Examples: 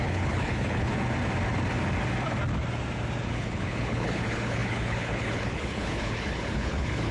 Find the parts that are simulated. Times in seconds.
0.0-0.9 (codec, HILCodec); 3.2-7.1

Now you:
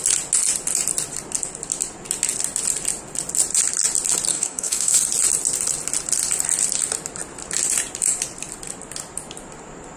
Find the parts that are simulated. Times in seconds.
4.3-5.0 (codec, DAC)

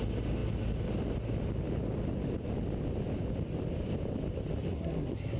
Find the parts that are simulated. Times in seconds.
4.7-5.4 (codec, SNAC)

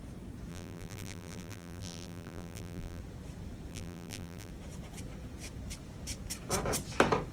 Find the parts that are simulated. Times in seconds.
0.5-3.0 (vocoder, BigVGAN v2); 3.7-4.5